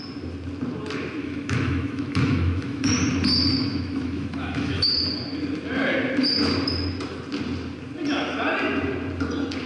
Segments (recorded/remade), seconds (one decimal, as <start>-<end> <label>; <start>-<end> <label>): 0.0-1.2 recorded; 1.2-2.9 remade; 2.9-3.5 recorded; 3.5-5.0 remade; 5.0-9.7 recorded

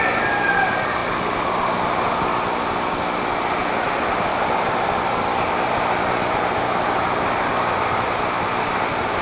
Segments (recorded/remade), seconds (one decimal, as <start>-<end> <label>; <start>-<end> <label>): 0.0-9.2 recorded

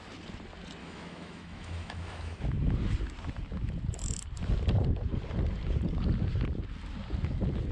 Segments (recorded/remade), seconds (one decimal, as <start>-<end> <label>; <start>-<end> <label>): 0.0-0.8 recorded; 0.8-2.4 remade; 2.4-7.7 recorded

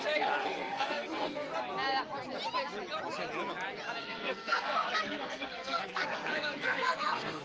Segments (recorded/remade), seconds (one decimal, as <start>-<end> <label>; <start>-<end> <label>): 0.0-1.5 remade; 1.5-4.0 recorded; 4.0-7.4 remade

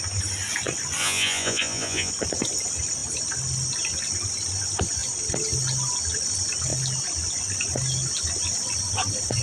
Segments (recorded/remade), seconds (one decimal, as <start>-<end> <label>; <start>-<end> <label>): 0.0-1.0 recorded; 1.0-2.1 remade; 2.1-9.4 recorded